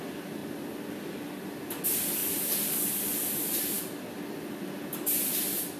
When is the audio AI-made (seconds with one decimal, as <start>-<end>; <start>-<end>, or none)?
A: none